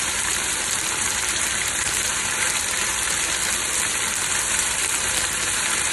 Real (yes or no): no